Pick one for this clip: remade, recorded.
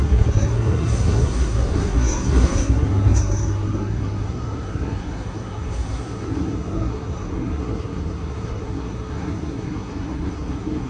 remade